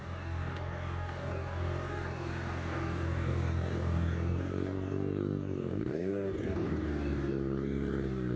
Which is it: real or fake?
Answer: fake